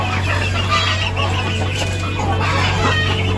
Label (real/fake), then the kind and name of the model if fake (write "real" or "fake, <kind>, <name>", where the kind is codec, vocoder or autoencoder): real